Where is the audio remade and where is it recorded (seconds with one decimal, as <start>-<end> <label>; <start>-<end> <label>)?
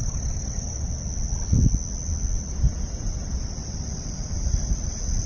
0.0-5.3 recorded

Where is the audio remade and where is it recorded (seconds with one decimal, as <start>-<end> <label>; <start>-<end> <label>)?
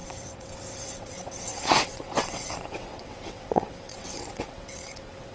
0.0-5.3 remade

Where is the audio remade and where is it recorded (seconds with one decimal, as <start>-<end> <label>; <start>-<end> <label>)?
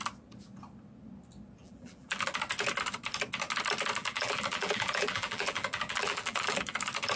0.0-1.6 recorded; 1.6-2.3 remade; 2.3-4.0 recorded; 4.0-6.8 remade; 6.8-7.2 recorded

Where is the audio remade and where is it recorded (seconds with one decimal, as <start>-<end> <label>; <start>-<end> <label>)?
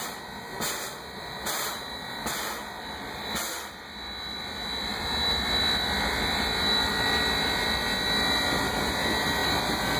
0.0-10.0 recorded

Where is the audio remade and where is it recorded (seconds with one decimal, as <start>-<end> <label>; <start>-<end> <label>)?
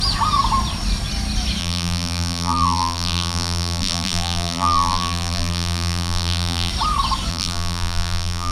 0.0-1.6 recorded; 1.6-6.7 remade; 6.7-7.3 recorded; 7.3-8.5 remade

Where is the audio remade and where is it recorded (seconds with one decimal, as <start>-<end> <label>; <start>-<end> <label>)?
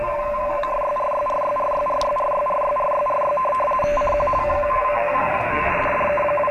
0.0-0.7 remade; 0.7-4.4 recorded; 4.4-5.7 remade; 5.7-6.5 recorded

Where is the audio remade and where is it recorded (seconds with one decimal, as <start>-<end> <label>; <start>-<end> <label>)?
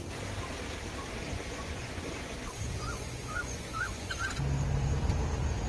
0.0-1.3 recorded; 1.3-4.2 remade; 4.2-5.7 recorded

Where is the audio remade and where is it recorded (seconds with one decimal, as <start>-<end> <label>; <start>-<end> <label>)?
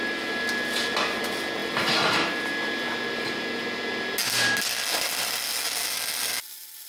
0.0-6.9 recorded